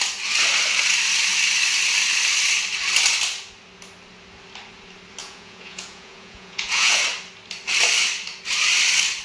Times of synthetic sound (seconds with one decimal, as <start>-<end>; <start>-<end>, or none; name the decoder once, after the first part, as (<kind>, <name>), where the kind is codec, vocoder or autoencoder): 5.2-7.0 (vocoder, Vocos)